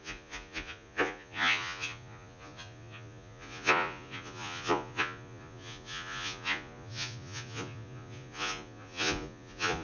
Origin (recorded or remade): remade